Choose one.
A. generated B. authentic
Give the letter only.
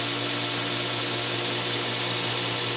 B